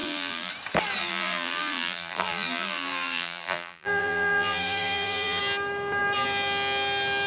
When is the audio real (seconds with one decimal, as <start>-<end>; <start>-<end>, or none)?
0.5-1.0; 5.4-7.3